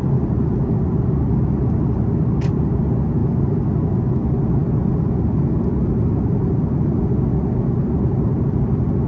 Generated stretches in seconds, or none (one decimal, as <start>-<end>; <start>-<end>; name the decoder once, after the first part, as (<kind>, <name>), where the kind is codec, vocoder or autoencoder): none